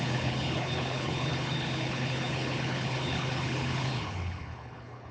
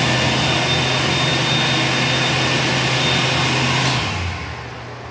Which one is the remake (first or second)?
first